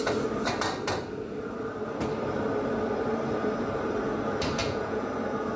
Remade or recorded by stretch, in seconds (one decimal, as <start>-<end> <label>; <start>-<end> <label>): 0.0-4.6 recorded; 4.6-5.1 remade; 5.1-5.6 recorded